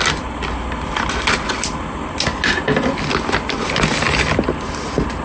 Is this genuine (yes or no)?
yes